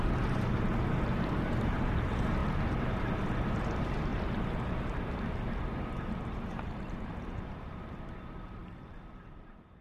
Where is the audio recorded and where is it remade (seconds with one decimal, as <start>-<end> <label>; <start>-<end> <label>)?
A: 0.0-4.1 remade; 4.1-5.9 recorded; 5.9-9.8 remade